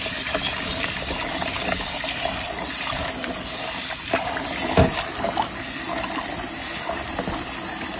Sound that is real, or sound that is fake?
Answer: real